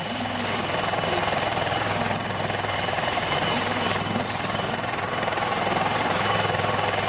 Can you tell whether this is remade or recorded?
remade